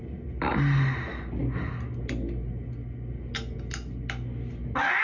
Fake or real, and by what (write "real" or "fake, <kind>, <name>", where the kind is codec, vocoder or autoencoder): real